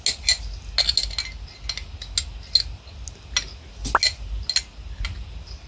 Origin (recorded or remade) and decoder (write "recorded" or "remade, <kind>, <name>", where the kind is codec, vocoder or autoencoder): recorded